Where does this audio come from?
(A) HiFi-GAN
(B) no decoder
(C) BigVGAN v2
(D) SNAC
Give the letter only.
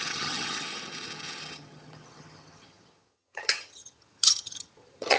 A